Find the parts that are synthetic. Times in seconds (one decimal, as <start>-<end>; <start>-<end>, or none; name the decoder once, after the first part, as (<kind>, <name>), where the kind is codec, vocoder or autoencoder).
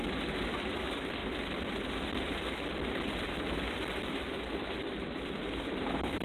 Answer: none